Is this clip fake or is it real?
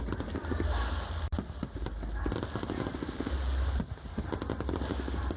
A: real